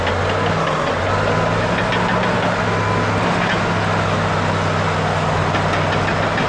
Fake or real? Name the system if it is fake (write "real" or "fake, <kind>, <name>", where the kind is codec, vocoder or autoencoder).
real